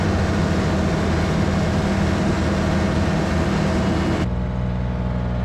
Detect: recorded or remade recorded